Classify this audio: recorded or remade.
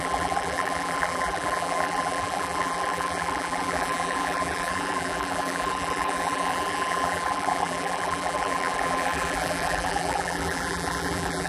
remade